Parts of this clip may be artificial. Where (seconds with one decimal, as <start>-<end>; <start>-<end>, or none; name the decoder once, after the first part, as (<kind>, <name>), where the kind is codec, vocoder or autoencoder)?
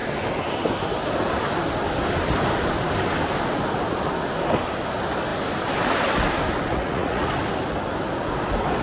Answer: 6.7-7.3 (vocoder, Vocos)